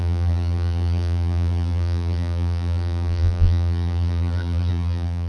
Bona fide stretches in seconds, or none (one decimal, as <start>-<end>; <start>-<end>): none